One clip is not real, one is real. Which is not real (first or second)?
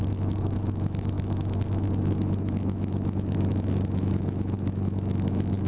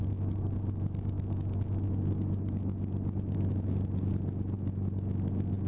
first